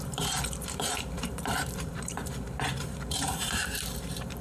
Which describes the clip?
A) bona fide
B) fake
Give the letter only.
B